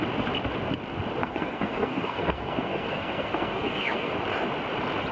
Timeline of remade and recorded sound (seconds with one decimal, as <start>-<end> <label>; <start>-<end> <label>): 0.0-1.2 recorded; 1.2-4.1 remade; 4.1-5.1 recorded